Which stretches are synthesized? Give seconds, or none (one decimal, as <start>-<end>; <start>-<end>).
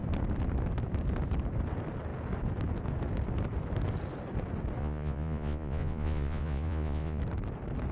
4.8-7.2